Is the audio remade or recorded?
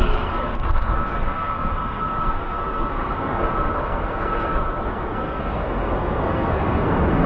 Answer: remade